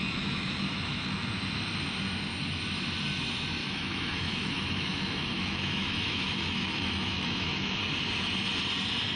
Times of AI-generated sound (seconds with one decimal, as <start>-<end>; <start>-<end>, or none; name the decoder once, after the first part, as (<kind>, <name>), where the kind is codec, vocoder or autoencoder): 0.0-1.3 (autoencoder, DAC-VAE); 3.6-7.8